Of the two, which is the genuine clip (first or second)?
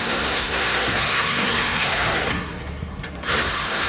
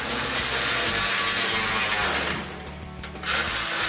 second